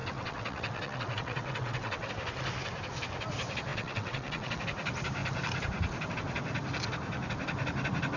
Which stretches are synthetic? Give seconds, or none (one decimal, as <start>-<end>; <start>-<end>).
0.0-2.1; 3.7-4.6